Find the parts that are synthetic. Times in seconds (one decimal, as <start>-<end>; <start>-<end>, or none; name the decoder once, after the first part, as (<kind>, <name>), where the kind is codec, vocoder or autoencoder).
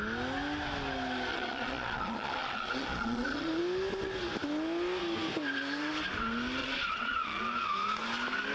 1.3-3.6 (vocoder, Vocos); 6.6-7.4